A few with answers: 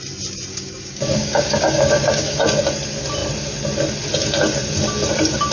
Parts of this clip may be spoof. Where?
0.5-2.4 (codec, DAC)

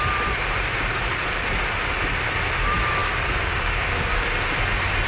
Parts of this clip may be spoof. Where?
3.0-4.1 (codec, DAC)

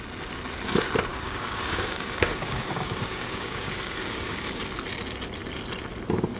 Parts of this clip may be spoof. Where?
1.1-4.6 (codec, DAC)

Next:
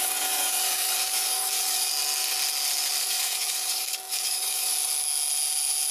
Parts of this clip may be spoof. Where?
0.0-1.9 (codec, DAC); 3.0-4.7

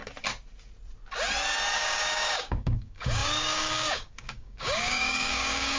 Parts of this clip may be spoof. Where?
1.7-5.8 (codec, DAC)